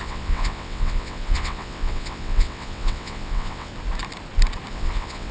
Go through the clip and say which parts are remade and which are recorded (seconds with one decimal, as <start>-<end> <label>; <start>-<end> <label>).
0.0-3.7 remade; 3.7-4.7 recorded; 4.7-5.3 remade